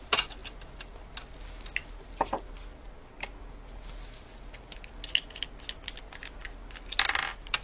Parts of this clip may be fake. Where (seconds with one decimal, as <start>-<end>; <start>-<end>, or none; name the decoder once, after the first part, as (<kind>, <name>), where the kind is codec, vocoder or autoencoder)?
none